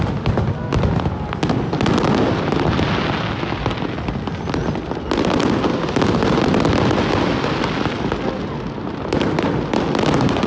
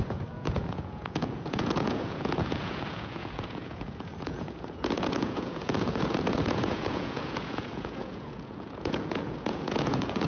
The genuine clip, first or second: first